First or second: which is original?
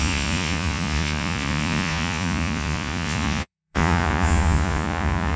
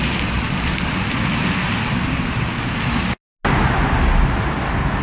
second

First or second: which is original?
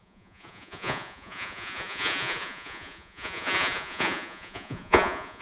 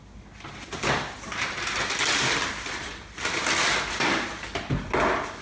second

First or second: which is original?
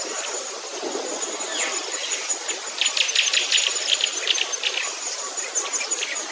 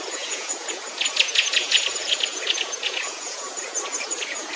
first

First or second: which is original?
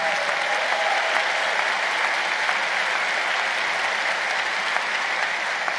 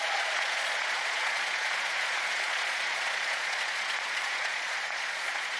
first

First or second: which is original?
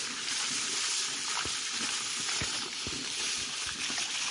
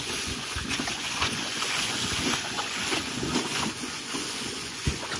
first